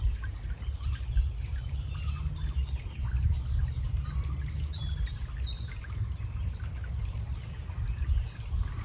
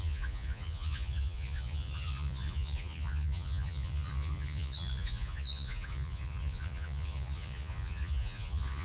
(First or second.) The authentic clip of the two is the first